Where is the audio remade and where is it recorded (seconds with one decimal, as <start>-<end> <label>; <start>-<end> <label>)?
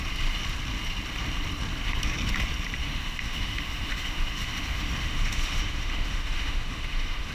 0.0-2.8 recorded; 2.8-7.3 remade